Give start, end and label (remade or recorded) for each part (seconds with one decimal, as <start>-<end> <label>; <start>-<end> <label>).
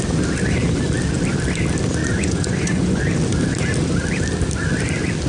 0.0-2.0 recorded; 2.0-3.0 remade; 3.0-5.3 recorded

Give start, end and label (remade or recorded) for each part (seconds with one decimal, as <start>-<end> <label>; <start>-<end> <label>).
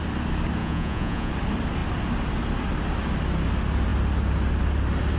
0.0-0.6 recorded; 0.6-1.3 remade; 1.3-5.2 recorded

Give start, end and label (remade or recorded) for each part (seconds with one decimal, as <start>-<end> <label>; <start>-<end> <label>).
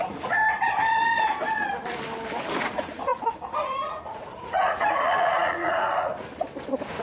0.0-0.4 remade; 0.4-2.6 recorded; 2.6-6.1 remade; 6.1-7.0 recorded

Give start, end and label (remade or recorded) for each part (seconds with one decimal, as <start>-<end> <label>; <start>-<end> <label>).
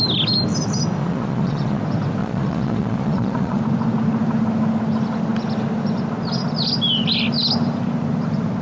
0.0-1.0 recorded; 1.0-1.8 remade; 1.8-2.2 recorded; 2.2-3.6 remade; 3.6-8.6 recorded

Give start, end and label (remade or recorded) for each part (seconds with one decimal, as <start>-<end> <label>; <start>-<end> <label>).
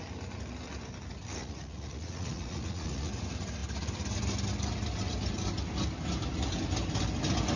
0.0-1.4 recorded; 1.4-3.1 remade; 3.1-7.6 recorded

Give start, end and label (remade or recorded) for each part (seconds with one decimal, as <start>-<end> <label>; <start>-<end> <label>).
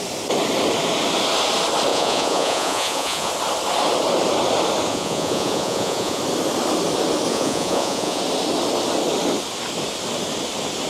0.0-1.9 recorded; 1.9-3.3 remade; 3.3-4.9 recorded; 4.9-6.2 remade; 6.2-7.3 recorded; 7.3-8.2 remade; 8.2-10.9 recorded